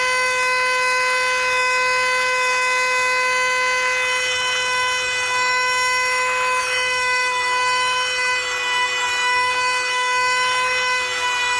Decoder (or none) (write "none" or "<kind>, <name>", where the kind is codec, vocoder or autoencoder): autoencoder, DAC-VAE